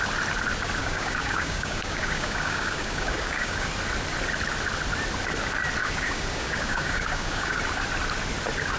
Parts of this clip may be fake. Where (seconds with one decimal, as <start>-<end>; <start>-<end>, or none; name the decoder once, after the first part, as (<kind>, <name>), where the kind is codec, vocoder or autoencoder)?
0.8-3.7 (codec, DAC); 5.8-7.6